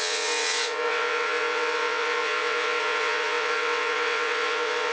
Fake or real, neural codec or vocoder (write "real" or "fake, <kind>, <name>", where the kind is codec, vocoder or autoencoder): fake, vocoder, WaveNeXt